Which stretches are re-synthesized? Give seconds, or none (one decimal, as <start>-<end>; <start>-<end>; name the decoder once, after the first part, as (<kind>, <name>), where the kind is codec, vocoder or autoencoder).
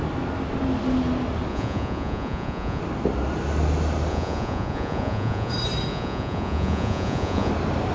1.5-2.8 (vocoder, Vocos); 4.1-5.5; 5.9-7.5